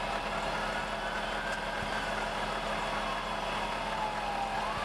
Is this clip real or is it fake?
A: real